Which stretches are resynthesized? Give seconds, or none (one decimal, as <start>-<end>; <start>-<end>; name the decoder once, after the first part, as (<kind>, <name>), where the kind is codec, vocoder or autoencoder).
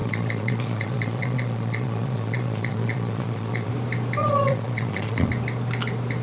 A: 0.0-3.7 (vocoder, Vocos); 4.2-5.3